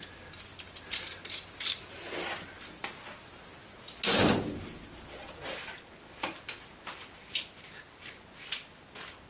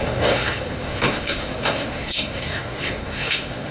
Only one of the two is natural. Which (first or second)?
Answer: first